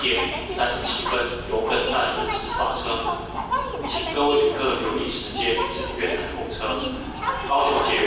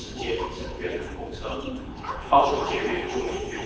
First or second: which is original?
first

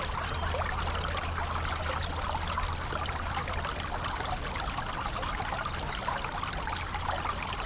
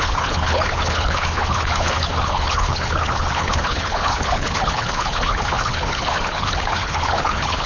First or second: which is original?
first